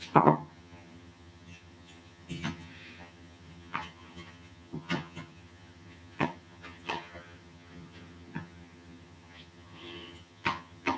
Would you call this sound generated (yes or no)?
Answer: yes